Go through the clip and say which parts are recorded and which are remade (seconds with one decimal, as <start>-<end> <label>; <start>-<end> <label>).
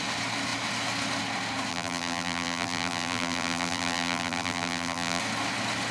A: 0.0-1.7 recorded; 1.7-5.2 remade; 5.2-5.9 recorded